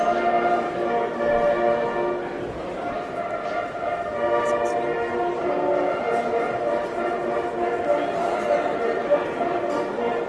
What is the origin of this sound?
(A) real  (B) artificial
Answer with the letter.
A